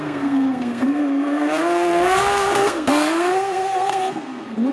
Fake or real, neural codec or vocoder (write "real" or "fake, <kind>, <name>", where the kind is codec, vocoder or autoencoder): fake, codec, SNAC